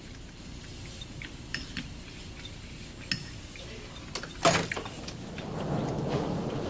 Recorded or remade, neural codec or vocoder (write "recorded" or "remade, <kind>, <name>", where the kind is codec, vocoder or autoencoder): recorded